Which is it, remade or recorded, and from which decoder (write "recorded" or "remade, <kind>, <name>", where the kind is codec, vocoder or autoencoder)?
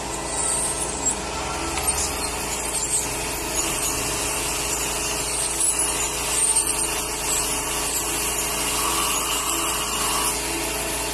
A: recorded